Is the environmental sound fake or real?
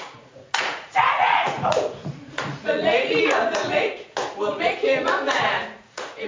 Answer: fake